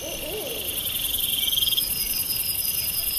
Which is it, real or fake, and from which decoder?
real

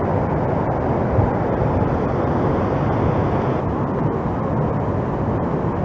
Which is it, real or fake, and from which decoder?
real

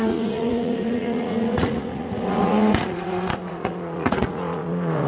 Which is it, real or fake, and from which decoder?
fake, vocoder, Vocos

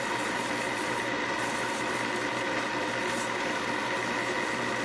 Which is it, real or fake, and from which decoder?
real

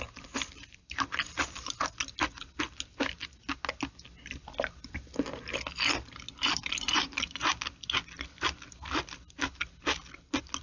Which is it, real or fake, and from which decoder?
real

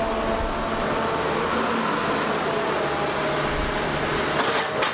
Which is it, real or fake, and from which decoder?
real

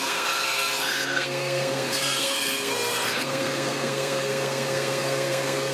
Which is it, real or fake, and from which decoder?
fake, codec, SNAC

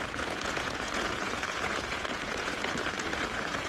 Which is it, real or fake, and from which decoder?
fake, vocoder, Vocos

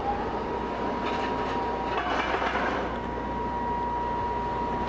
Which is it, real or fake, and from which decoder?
real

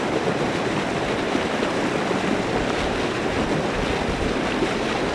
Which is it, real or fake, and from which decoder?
real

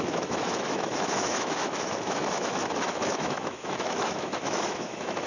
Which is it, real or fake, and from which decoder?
fake, autoencoder, DAC-VAE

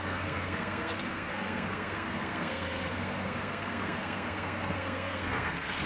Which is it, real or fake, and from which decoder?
fake, codec, SNAC